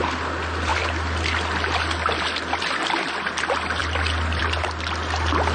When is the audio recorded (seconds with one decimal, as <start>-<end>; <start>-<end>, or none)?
0.0-5.5